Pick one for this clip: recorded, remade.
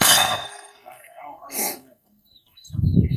remade